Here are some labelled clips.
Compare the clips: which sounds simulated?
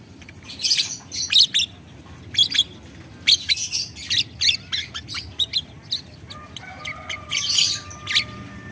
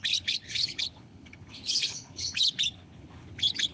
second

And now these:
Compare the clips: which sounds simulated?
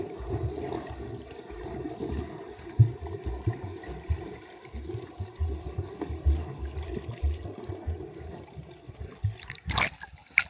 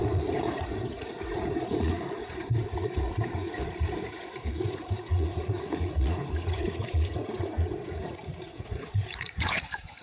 second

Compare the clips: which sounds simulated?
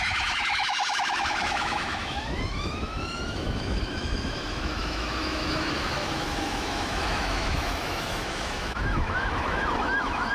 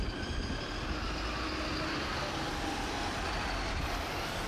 first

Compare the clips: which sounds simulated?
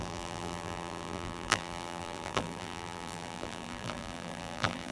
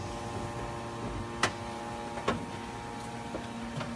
first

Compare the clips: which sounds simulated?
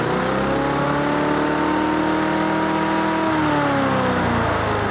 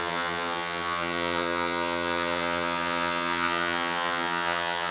second